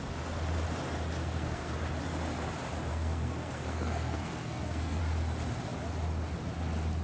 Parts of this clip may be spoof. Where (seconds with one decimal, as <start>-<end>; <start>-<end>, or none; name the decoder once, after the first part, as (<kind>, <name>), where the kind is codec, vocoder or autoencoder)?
1.2-1.7 (codec, SNAC); 2.9-5.0